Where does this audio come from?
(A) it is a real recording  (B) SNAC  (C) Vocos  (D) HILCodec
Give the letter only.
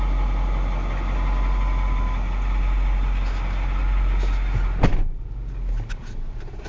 A